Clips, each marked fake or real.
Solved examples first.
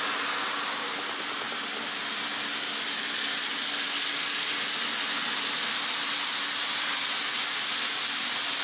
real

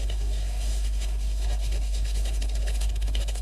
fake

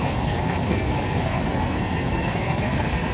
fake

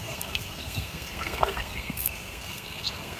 fake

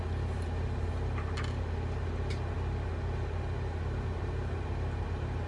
real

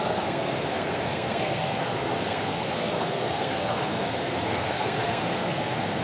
fake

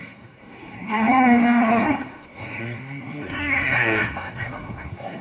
fake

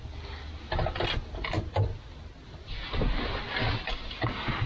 real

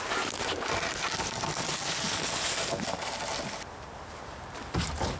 real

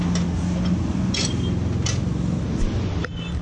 real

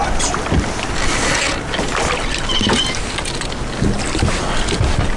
real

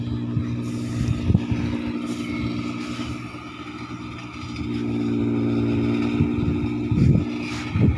real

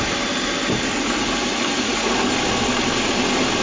real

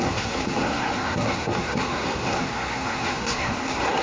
fake